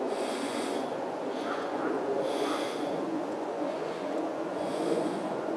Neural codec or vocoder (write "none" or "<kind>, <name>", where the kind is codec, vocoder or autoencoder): vocoder, Vocos